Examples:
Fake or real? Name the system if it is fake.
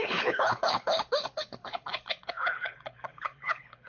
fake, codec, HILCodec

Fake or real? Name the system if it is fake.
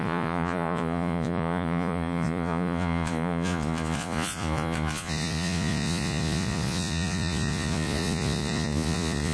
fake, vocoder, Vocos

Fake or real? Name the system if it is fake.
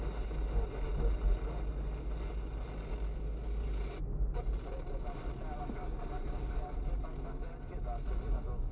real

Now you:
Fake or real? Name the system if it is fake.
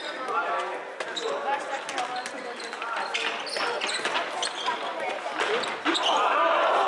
real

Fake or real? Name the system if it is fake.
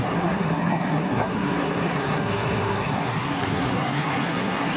fake, codec, SNAC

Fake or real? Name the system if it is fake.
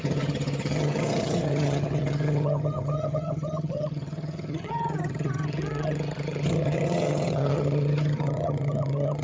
fake, vocoder, HiFi-GAN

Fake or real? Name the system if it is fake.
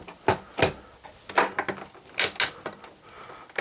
real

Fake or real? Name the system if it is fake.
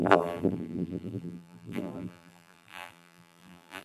fake, vocoder, BigVGAN v2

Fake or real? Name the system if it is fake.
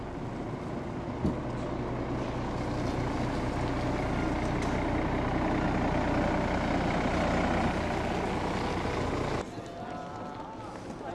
real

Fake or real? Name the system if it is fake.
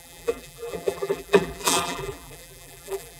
fake, vocoder, BigVGAN v2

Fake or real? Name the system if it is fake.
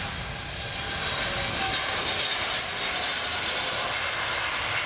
real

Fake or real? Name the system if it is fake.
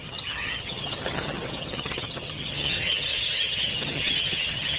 fake, vocoder, HiFi-GAN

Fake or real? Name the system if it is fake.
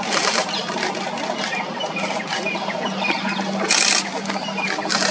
real